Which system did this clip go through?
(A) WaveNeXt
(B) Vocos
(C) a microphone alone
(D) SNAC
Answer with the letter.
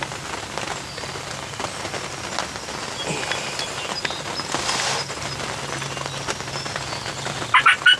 C